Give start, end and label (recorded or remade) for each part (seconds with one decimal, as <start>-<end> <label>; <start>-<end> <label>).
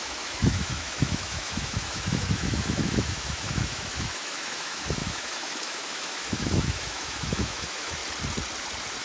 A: 0.0-8.0 remade; 8.0-9.0 recorded